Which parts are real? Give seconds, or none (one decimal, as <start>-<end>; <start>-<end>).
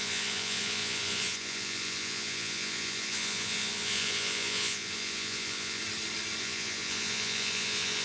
5.8-6.4